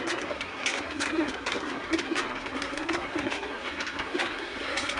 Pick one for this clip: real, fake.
fake